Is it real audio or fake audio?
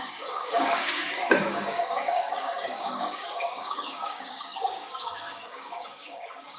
fake